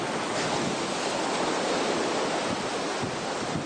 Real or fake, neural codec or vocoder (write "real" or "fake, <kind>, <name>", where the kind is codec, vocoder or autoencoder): real